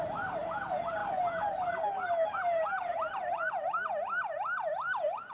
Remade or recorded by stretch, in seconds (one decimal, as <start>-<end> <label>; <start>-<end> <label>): 0.0-5.3 recorded